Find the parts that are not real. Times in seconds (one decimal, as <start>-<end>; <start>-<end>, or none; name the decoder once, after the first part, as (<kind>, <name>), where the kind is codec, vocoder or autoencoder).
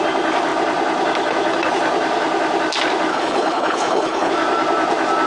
3.1-4.3 (codec, HILCodec)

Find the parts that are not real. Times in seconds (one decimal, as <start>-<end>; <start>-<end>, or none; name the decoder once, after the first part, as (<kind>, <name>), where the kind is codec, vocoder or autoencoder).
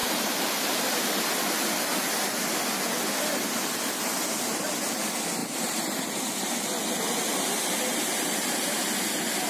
0.0-1.2 (vocoder, BigVGAN v2); 5.4-6.3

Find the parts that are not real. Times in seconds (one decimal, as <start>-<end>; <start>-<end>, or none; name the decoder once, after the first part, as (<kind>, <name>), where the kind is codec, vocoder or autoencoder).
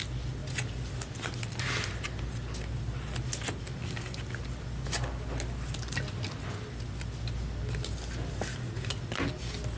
none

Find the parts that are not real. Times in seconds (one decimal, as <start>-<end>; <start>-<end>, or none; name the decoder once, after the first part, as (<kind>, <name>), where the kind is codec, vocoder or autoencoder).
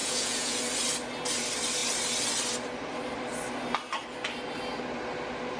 0.0-0.6 (vocoder, Vocos)